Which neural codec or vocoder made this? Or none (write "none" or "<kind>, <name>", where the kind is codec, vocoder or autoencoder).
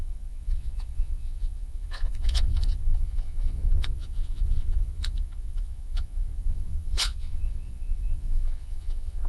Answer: vocoder, Vocos